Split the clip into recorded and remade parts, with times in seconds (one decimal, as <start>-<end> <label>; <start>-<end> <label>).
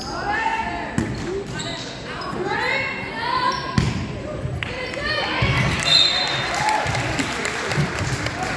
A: 0.0-8.6 recorded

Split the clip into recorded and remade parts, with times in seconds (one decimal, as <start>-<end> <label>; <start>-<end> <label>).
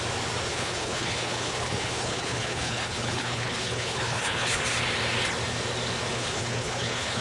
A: 0.0-0.5 recorded; 0.5-4.6 remade; 4.6-6.1 recorded; 6.1-7.2 remade